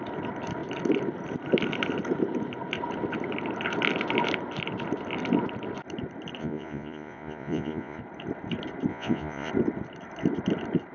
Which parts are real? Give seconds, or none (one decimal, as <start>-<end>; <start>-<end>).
0.0-6.4; 8.0-8.9; 9.5-10.9